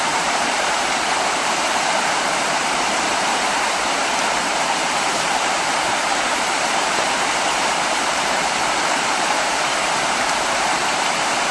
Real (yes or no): no